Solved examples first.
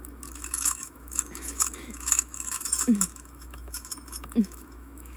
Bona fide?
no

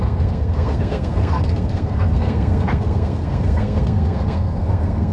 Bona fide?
no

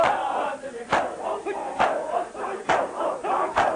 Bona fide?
yes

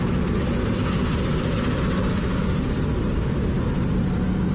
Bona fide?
yes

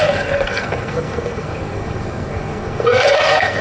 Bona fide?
no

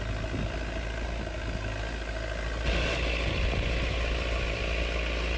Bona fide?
yes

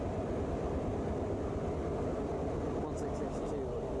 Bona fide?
yes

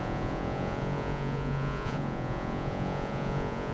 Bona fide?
no